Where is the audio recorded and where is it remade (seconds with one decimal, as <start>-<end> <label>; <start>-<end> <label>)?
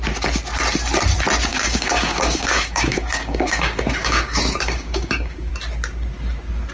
0.0-1.5 recorded; 1.5-5.5 remade; 5.5-6.7 recorded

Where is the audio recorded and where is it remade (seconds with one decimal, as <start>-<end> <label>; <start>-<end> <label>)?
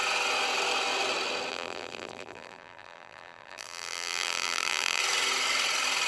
0.0-1.5 recorded; 1.5-5.0 remade; 5.0-6.1 recorded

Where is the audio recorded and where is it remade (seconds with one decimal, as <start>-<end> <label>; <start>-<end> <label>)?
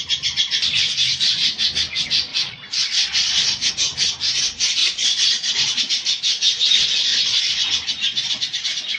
0.0-2.3 recorded; 2.3-3.7 remade; 3.7-4.8 recorded; 4.8-5.8 remade; 5.8-7.1 recorded; 7.1-7.6 remade; 7.6-9.0 recorded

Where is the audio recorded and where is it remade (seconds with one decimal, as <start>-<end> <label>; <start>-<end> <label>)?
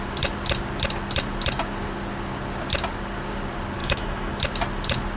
0.0-3.8 recorded; 3.8-4.3 remade; 4.3-5.2 recorded